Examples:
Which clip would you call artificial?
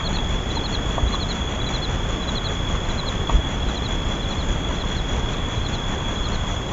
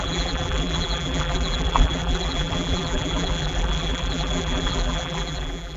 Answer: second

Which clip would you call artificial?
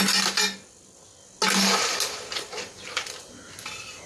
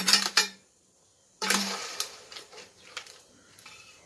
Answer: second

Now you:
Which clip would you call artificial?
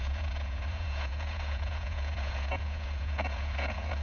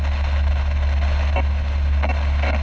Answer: first